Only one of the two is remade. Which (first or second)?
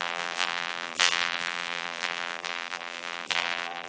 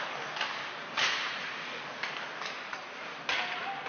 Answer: first